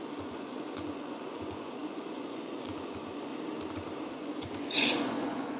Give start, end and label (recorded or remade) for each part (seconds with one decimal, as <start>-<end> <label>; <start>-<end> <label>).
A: 0.0-3.3 remade; 3.3-4.1 recorded; 4.1-5.6 remade

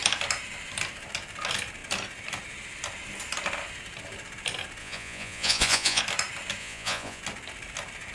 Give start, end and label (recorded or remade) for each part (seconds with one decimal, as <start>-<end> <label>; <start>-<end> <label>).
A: 0.0-4.8 recorded; 4.8-6.0 remade; 6.0-6.6 recorded; 6.6-7.2 remade; 7.2-8.1 recorded

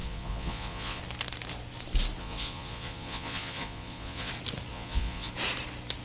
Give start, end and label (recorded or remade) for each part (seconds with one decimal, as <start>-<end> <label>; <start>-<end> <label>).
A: 0.0-1.0 remade; 1.0-2.2 recorded; 2.2-4.3 remade; 4.3-4.7 recorded; 4.7-5.3 remade; 5.3-6.0 recorded

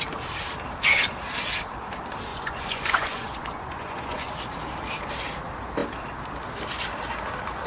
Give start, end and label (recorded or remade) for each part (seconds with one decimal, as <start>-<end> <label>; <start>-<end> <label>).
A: 0.0-2.3 recorded; 2.3-4.3 remade; 4.3-7.7 recorded

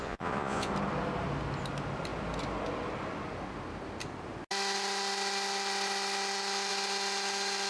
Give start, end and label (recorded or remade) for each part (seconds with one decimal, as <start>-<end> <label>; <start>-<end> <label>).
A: 0.0-0.7 remade; 0.7-7.7 recorded